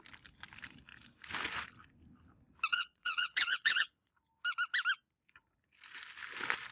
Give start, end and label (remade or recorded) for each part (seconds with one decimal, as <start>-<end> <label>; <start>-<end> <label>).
0.0-2.7 recorded; 2.7-4.1 remade; 4.1-6.7 recorded